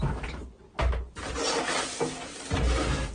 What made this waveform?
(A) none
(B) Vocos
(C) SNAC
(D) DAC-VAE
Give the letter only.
A